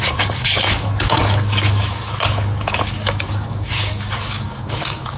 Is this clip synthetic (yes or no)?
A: yes